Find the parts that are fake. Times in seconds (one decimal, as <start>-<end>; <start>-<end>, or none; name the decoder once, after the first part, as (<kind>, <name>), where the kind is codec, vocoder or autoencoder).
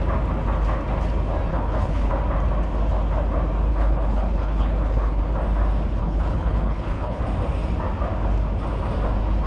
1.5-2.1 (codec, HILCodec); 3.7-5.2; 6.0-7.2